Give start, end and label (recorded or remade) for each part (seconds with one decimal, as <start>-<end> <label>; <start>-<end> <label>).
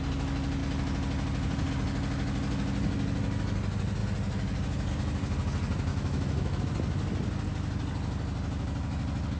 0.0-5.9 recorded; 5.9-6.6 remade; 6.6-9.4 recorded